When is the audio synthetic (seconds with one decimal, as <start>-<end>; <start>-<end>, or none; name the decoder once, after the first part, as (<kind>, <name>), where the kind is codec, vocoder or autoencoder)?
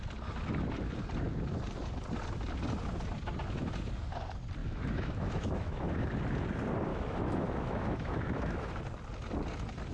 4.6-5.9 (autoencoder, DAC-VAE); 6.9-8.7